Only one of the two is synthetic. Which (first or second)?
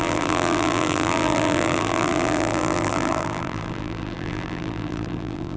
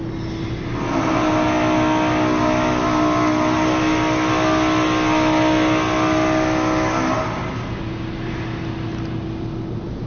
first